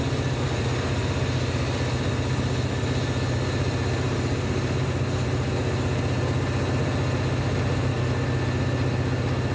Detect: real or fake real